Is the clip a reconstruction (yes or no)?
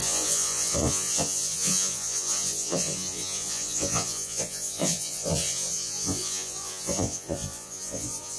yes